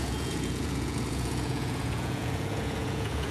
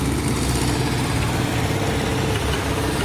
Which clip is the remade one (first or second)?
first